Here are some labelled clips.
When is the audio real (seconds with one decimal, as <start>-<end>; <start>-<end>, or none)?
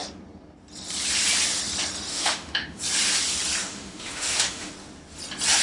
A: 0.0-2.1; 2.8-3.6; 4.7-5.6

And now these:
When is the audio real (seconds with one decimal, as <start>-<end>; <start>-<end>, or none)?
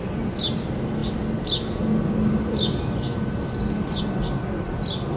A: 0.0-5.2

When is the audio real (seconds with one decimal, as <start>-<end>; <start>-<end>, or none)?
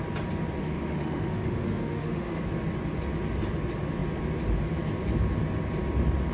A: 0.0-0.6; 2.4-6.3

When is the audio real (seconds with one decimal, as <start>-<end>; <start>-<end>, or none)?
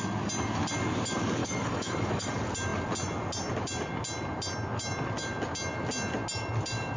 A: 0.0-1.4; 2.3-7.0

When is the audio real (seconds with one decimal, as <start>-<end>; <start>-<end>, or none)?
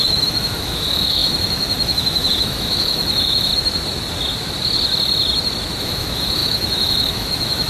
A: 3.5-5.8